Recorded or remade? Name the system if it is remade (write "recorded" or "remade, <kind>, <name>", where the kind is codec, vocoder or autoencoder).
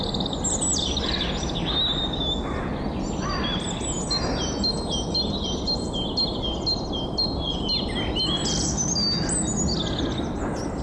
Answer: recorded